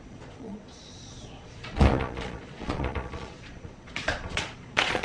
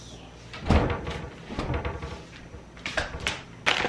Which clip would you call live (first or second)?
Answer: second